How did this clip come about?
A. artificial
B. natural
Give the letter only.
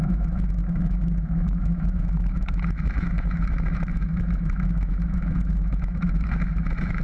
A